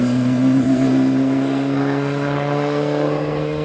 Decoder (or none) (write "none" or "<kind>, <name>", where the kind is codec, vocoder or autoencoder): codec, SNAC